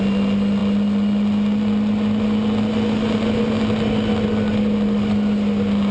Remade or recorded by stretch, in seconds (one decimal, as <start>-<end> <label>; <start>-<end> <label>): 0.0-5.9 recorded

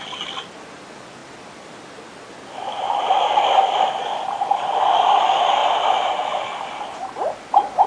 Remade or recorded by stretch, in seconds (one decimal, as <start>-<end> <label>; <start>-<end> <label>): 0.0-7.9 recorded